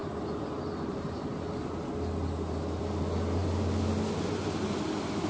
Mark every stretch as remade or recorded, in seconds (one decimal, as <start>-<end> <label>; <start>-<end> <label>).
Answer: 0.0-5.3 recorded